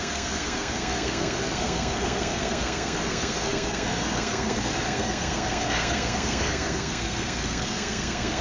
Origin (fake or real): fake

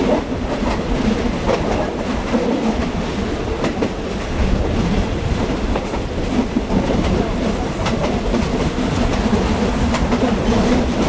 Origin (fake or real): real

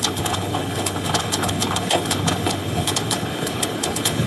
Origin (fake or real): fake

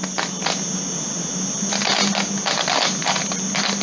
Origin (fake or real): real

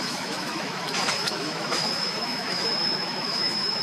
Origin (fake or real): fake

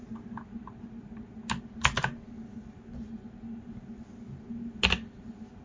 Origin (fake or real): real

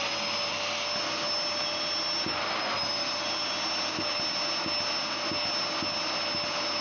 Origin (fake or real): real